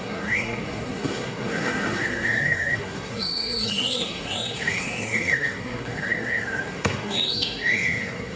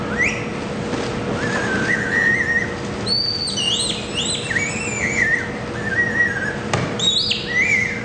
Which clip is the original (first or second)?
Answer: second